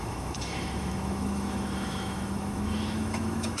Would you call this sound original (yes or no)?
no